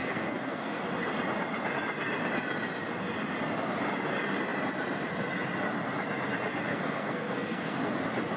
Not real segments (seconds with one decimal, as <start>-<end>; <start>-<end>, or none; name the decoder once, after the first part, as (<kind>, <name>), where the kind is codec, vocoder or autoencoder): 0.0-0.8 (codec, SNAC); 6.7-7.9